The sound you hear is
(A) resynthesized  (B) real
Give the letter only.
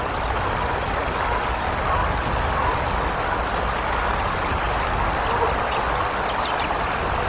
B